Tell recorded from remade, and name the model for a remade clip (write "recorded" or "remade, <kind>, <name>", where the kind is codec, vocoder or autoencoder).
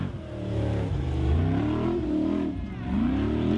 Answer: recorded